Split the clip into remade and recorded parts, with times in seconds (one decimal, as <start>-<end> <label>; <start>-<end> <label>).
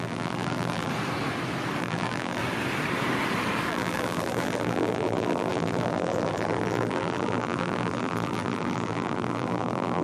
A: 0.0-0.9 remade; 0.9-1.8 recorded; 1.8-2.4 remade; 2.4-3.7 recorded; 3.7-10.0 remade